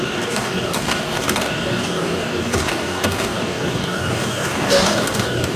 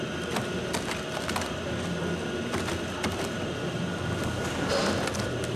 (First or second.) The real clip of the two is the second